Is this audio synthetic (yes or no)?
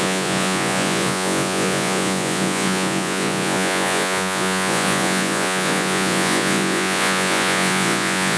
yes